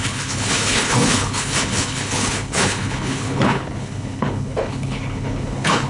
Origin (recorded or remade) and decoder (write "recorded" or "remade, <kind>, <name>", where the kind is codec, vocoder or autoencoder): remade, codec, HILCodec